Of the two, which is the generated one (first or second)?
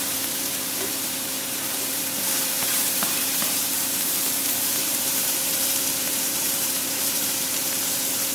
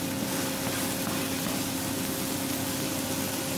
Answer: first